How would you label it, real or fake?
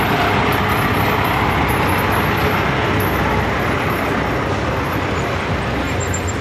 real